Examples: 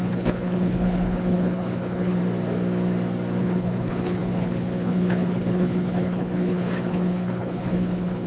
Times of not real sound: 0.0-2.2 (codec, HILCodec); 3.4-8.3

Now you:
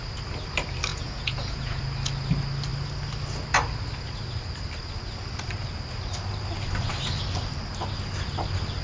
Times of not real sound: 0.9-1.8 (vocoder, Vocos)

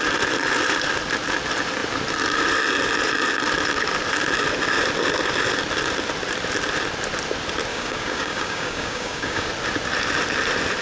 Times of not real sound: 7.7-9.5 (codec, DAC)

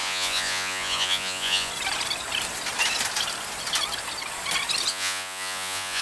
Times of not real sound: 0.0-1.7 (vocoder, Vocos); 4.9-6.0

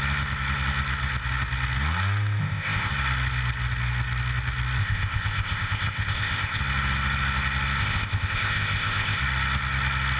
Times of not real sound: 2.4-2.9 (codec, ZipCodec); 4.8-6.6; 7.8-9.2

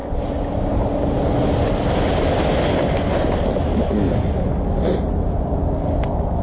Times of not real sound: none

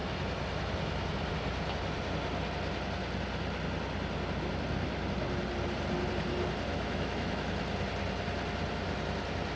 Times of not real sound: 6.7-7.5 (autoencoder, DAC-VAE)